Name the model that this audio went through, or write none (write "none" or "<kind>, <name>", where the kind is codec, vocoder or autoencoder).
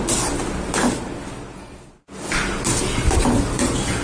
none